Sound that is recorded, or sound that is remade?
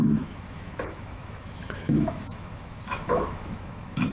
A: remade